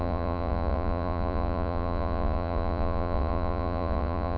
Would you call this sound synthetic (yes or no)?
yes